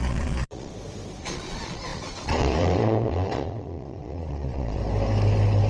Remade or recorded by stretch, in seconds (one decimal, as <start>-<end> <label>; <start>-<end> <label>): 0.0-0.7 remade; 0.7-1.2 recorded; 1.2-4.8 remade; 4.8-5.7 recorded

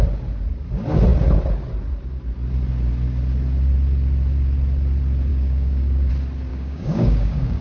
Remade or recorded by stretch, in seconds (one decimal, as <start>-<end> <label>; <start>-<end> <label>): 0.0-5.3 recorded; 5.3-6.1 remade; 6.1-6.5 recorded; 6.5-7.6 remade

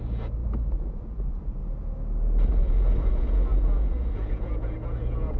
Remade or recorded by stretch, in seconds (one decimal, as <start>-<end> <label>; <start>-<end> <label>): 0.0-1.6 remade; 1.6-2.5 recorded; 2.5-5.4 remade